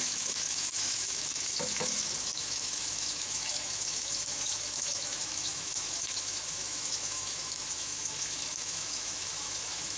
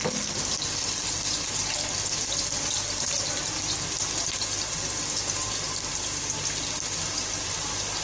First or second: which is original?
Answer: second